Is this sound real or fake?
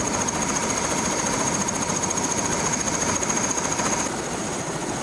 real